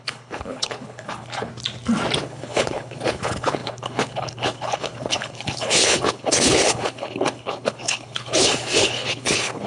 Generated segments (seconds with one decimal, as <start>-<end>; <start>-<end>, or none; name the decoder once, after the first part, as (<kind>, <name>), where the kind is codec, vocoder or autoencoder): 0.0-1.5 (codec, HILCodec); 2.2-9.7